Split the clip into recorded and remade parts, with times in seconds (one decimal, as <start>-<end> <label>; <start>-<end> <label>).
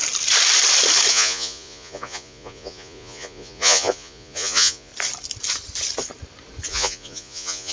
0.0-1.1 recorded; 1.1-4.9 remade; 4.9-6.7 recorded; 6.7-7.7 remade